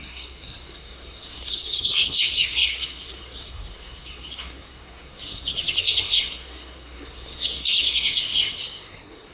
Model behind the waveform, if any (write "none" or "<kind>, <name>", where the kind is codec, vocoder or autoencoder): codec, SNAC